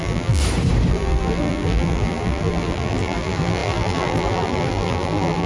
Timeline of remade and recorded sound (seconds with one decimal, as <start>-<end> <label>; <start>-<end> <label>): 0.0-0.4 remade; 0.4-0.9 recorded; 0.9-5.5 remade